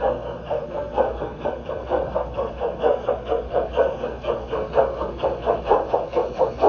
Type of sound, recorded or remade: remade